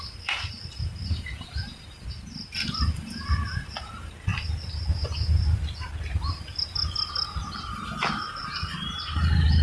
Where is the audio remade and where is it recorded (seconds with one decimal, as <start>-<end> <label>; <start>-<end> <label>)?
0.0-4.3 remade; 4.3-8.3 recorded; 8.3-9.6 remade